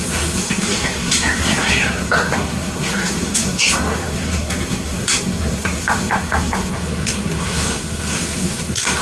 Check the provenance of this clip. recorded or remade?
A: remade